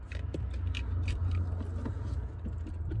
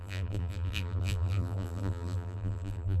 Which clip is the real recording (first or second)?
first